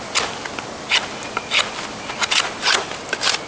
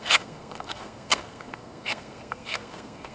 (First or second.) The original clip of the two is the first